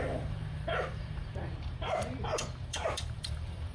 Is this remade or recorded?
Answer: remade